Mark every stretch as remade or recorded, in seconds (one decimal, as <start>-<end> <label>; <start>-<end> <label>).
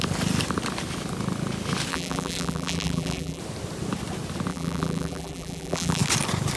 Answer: 0.0-1.9 recorded; 1.9-3.4 remade; 3.4-4.5 recorded; 4.5-6.0 remade; 6.0-6.6 recorded